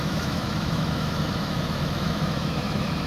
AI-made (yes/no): yes